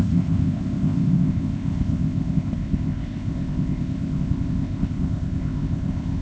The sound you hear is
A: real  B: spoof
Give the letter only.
B